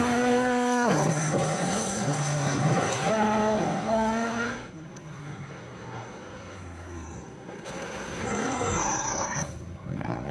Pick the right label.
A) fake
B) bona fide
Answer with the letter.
A